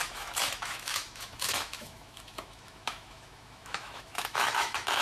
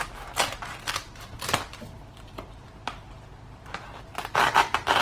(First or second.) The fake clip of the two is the first